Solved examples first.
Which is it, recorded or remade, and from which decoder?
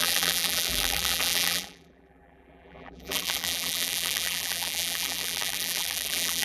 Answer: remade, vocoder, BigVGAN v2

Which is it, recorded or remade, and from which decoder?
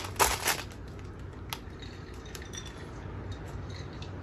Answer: recorded